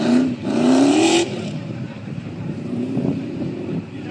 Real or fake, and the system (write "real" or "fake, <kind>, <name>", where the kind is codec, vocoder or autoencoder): fake, vocoder, BigVGAN v2